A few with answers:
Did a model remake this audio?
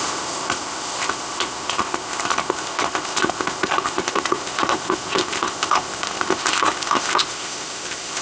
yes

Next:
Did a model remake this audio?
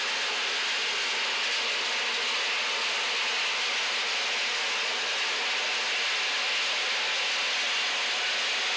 no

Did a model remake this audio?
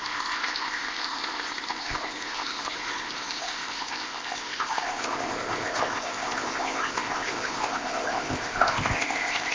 yes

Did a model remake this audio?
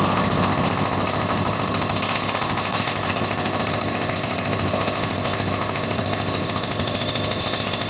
yes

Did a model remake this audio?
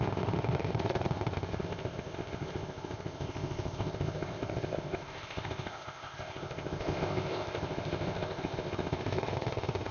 yes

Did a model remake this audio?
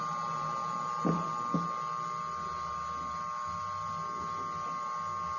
no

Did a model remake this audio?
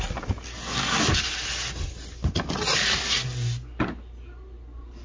no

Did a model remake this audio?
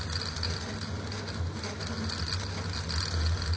no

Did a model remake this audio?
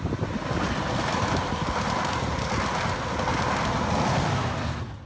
no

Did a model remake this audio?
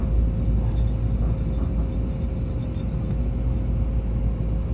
no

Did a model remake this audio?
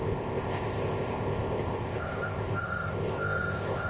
yes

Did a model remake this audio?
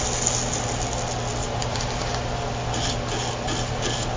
no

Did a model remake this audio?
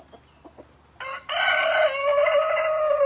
no